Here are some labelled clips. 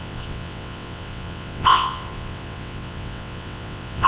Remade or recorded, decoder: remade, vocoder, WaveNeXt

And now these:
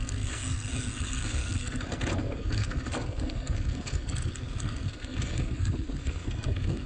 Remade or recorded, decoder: remade, codec, SNAC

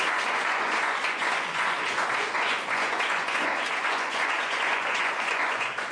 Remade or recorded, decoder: remade, vocoder, Vocos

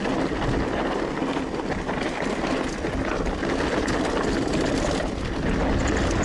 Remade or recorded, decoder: recorded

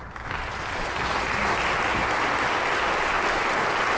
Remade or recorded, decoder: recorded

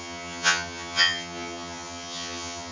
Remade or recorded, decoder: remade, vocoder, HiFi-GAN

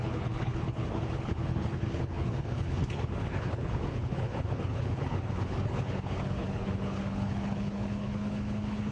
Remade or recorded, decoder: remade, codec, HILCodec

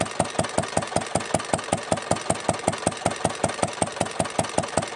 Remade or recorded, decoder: recorded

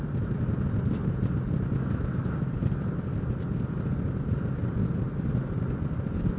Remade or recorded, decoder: recorded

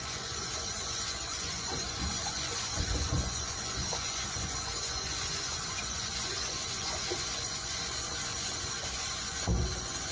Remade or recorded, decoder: remade, vocoder, Vocos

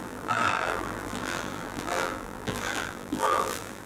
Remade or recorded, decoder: remade, vocoder, BigVGAN v2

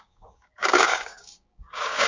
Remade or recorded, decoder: remade, codec, DAC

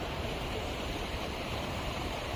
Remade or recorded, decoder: remade, vocoder, BigVGAN v2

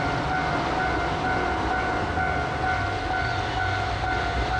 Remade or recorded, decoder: recorded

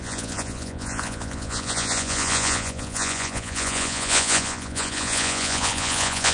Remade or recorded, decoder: remade, vocoder, Vocos